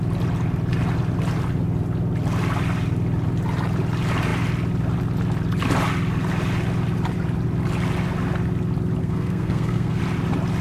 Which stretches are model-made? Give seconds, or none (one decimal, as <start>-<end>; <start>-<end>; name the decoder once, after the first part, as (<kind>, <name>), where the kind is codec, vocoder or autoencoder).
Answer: 9.0-10.0 (codec, SNAC)